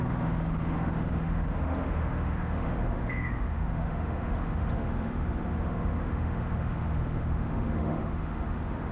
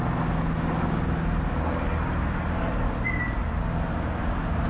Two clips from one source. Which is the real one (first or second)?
second